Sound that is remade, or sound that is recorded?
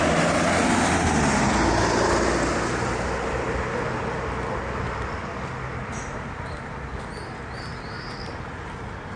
recorded